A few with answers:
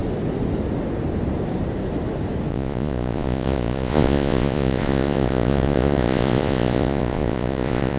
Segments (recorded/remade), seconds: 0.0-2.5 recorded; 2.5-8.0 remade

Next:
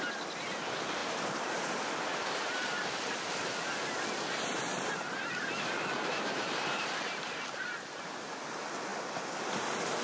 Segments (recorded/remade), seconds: 0.0-1.0 recorded; 1.0-1.7 remade; 1.7-2.1 recorded; 2.1-2.6 remade; 2.6-4.7 recorded; 4.7-8.3 remade; 8.3-10.0 recorded

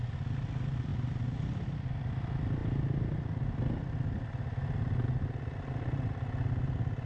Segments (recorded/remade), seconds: 0.0-7.1 recorded

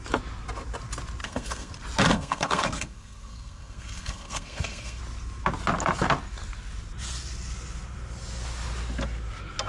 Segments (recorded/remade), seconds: 0.0-1.2 recorded; 1.2-1.7 remade; 1.7-2.1 recorded; 2.1-5.0 remade; 5.0-9.7 recorded